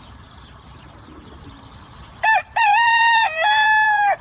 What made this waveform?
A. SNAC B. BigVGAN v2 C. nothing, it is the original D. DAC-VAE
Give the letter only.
B